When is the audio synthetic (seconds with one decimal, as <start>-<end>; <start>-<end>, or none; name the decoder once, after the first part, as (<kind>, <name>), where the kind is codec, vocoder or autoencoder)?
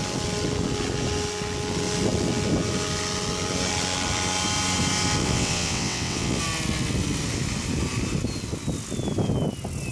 5.2-6.4 (vocoder, WaveNeXt)